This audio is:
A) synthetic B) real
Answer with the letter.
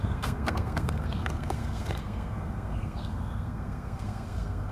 A